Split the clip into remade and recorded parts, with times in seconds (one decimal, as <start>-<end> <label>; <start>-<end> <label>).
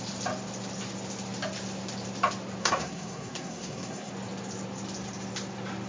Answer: 0.0-2.6 recorded; 2.6-4.1 remade; 4.1-5.9 recorded